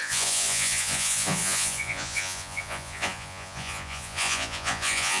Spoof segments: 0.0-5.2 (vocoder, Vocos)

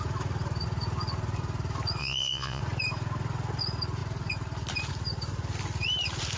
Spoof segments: 2.0-2.6 (vocoder, Vocos)

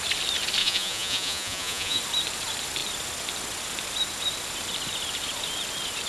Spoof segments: 0.6-2.0 (vocoder, Vocos)

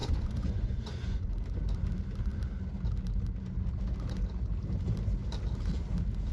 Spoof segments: 0.0-1.3 (vocoder, Vocos)

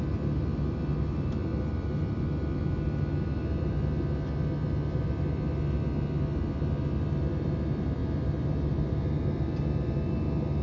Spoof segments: none